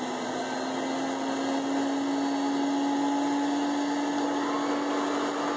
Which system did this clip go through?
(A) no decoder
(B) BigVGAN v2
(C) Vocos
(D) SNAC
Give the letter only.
A